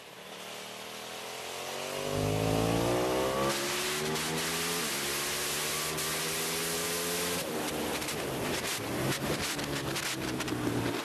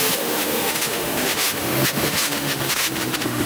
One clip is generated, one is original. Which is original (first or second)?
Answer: first